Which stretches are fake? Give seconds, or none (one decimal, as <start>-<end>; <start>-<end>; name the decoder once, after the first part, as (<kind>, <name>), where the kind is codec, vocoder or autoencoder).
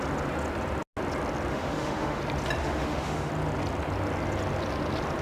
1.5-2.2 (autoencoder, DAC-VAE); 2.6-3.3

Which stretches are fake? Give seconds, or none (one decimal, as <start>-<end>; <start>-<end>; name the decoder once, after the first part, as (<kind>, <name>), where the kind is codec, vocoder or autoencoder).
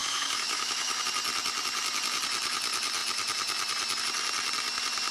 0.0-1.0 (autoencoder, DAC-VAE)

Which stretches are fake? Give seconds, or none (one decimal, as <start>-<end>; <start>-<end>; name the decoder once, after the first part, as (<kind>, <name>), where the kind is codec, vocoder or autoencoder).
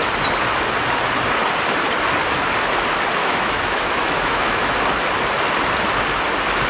3.2-4.8 (autoencoder, DAC-VAE)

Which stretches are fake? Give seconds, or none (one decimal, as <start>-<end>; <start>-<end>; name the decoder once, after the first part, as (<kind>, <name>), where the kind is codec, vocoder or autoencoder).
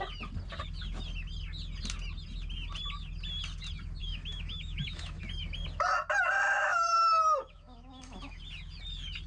4.0-5.2 (autoencoder, DAC-VAE); 6.7-8.4